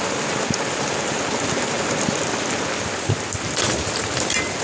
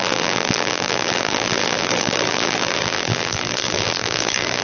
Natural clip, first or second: first